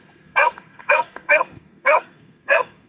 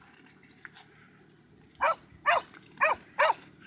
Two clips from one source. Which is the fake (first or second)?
first